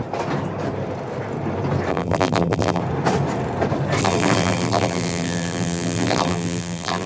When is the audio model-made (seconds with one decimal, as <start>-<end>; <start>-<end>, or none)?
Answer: 1.9-2.8; 4.0-7.1